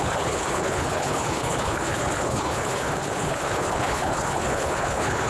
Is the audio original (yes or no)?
no